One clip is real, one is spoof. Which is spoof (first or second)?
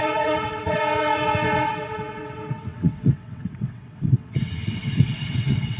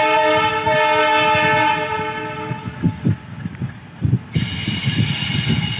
first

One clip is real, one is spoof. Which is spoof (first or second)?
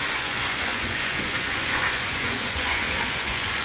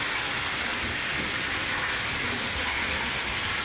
first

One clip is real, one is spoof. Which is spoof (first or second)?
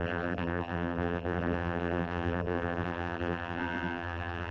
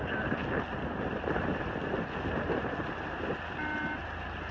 first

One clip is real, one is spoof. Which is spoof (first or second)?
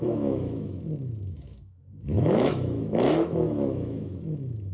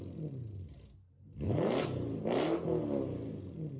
first